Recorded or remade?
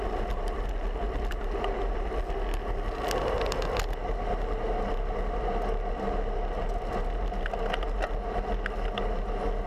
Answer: recorded